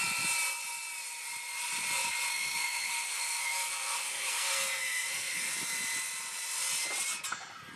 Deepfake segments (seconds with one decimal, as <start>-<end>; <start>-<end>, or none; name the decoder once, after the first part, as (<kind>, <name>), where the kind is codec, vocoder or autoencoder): 2.3-5.5 (codec, SNAC)